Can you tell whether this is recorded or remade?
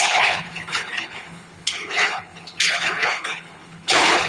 remade